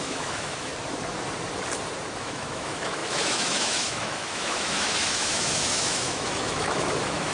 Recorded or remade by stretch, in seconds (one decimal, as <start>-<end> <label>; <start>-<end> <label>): 0.0-0.7 remade; 0.7-2.2 recorded; 2.2-7.3 remade